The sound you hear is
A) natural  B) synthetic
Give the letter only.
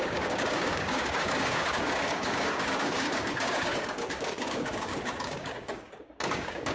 B